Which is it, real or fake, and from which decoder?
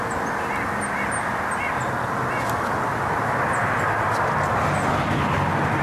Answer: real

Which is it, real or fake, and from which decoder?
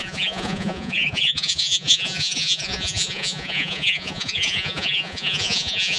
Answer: fake, vocoder, Vocos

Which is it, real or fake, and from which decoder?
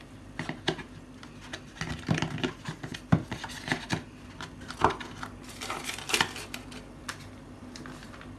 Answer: real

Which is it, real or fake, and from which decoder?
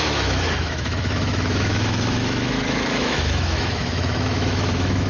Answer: fake, autoencoder, DAC-VAE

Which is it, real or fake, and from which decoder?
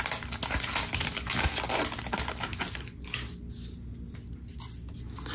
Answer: real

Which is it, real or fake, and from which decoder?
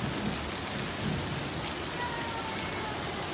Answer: real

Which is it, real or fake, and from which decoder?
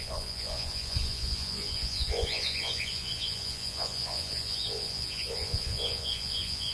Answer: fake, vocoder, Vocos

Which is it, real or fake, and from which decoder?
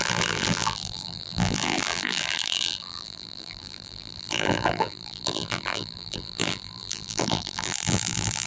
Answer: fake, vocoder, BigVGAN v2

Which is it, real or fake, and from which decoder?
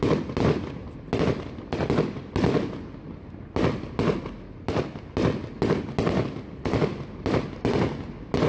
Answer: real